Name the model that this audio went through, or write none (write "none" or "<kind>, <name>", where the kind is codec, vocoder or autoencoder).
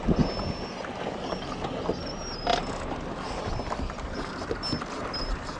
none